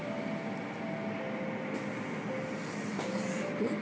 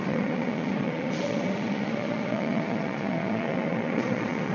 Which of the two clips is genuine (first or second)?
first